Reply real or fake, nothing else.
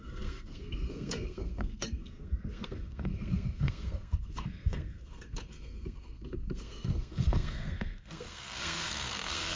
fake